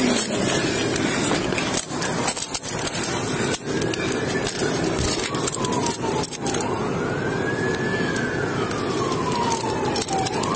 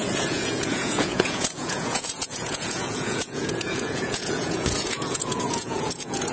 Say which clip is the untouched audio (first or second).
first